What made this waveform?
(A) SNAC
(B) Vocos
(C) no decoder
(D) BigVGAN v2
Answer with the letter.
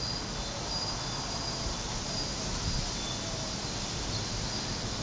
C